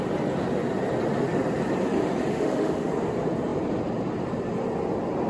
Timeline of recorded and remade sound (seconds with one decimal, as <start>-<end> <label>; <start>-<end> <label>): 0.0-2.3 recorded; 2.3-2.9 remade; 2.9-5.3 recorded